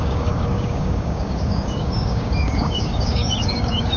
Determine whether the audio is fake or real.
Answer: fake